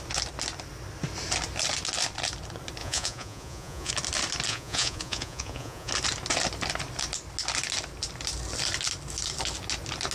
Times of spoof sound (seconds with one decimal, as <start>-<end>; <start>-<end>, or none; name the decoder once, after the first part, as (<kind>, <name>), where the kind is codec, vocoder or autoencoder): 2.8-3.9 (vocoder, Vocos); 4.5-5.9